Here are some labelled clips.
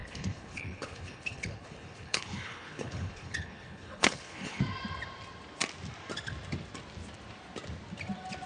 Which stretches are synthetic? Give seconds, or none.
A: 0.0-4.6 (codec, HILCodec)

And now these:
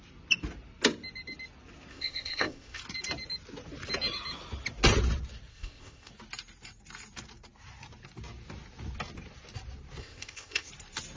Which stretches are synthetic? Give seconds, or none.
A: 1.9-2.8 (codec, ZipCodec); 5.5-6.1; 10.0-10.7

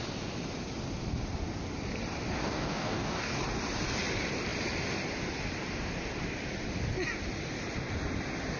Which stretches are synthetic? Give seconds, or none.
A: 2.4-3.4 (codec, DAC)

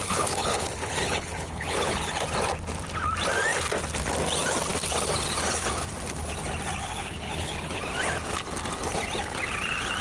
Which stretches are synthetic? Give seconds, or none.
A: 0.0-2.1 (codec, HILCodec); 6.8-7.8